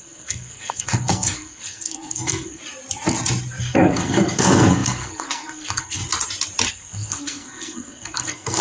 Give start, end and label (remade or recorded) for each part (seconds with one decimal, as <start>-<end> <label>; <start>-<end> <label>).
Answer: 0.0-2.6 remade; 2.6-3.6 recorded; 3.6-6.0 remade; 6.0-6.7 recorded; 6.7-8.6 remade